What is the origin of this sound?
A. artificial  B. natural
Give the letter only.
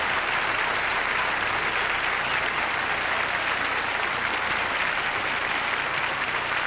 B